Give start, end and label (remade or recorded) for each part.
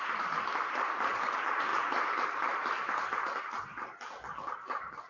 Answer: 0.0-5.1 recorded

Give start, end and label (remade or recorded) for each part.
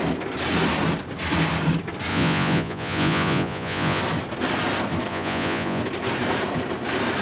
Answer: 0.0-2.1 recorded; 2.1-4.0 remade; 4.0-5.1 recorded; 5.1-5.8 remade; 5.8-7.2 recorded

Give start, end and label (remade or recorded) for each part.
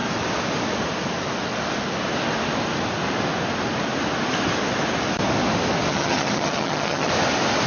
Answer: 0.0-5.9 recorded; 5.9-7.1 remade; 7.1-7.7 recorded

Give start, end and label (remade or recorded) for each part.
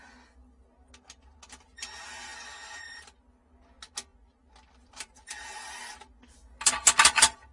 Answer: 0.0-2.3 recorded; 2.3-2.9 remade; 2.9-4.1 recorded; 4.1-5.8 remade; 5.8-7.5 recorded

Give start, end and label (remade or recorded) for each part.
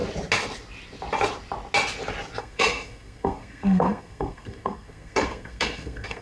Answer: 0.0-2.4 recorded; 2.4-6.2 remade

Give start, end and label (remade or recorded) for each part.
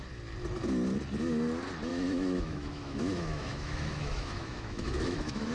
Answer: 0.0-1.9 recorded; 1.9-5.5 remade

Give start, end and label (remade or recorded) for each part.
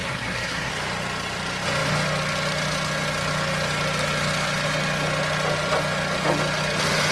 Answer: 0.0-0.7 remade; 0.7-7.1 recorded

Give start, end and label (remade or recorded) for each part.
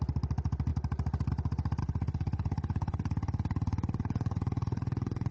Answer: 0.0-1.8 recorded; 1.8-5.3 remade